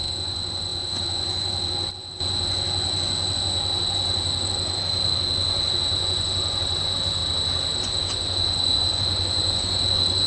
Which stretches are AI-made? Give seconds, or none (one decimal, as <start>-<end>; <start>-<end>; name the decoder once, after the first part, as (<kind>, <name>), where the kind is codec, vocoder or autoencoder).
0.0-7.2 (vocoder, Vocos); 7.8-10.3

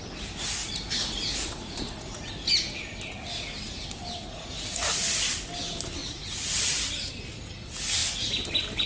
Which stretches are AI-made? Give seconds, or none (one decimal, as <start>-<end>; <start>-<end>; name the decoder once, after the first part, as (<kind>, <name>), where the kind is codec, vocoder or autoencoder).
0.6-2.5 (vocoder, Vocos); 4.2-5.3; 6.0-7.1